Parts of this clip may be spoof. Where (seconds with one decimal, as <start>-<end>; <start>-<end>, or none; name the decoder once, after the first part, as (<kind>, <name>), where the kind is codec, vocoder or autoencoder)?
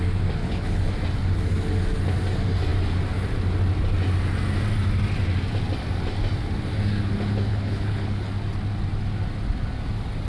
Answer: 0.4-0.9 (codec, HILCodec); 7.5-8.3